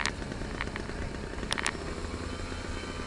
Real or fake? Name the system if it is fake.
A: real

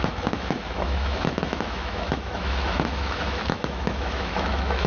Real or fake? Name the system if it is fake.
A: fake, autoencoder, DAC-VAE